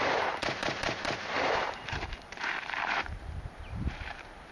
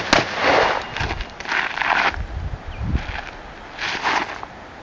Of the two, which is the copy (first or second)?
first